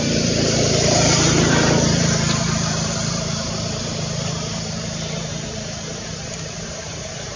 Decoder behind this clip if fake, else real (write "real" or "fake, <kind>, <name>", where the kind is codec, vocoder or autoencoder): fake, vocoder, BigVGAN v2